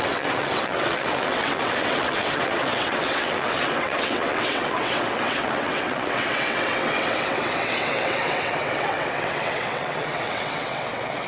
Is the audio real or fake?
fake